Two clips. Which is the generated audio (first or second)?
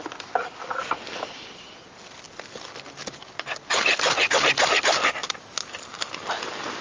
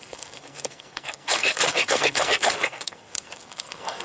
second